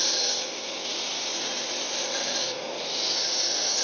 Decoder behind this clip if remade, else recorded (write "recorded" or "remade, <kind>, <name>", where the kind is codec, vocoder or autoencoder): recorded